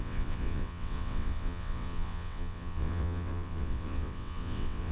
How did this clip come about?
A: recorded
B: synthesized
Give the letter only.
B